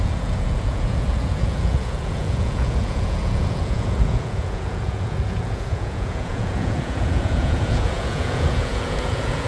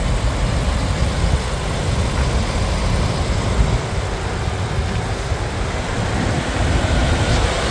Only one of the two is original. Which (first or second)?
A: second